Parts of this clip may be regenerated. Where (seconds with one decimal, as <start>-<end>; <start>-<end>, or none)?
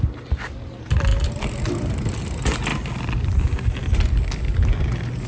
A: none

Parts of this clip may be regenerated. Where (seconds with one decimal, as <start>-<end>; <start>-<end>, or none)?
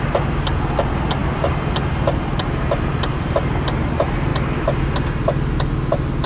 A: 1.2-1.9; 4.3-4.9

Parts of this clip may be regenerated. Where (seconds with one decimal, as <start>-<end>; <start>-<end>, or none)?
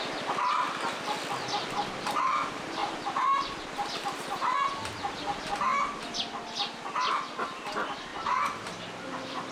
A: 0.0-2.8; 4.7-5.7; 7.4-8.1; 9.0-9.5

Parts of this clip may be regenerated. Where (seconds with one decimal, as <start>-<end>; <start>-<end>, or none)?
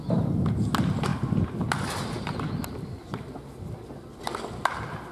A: none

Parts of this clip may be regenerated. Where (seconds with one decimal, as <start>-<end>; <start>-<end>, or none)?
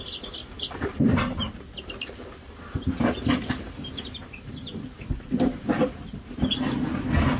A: 0.4-1.5; 2.3-6.5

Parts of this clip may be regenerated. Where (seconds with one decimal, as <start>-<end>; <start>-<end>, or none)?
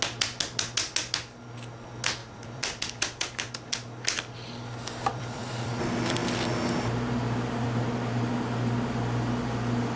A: 2.2-3.5; 5.1-5.7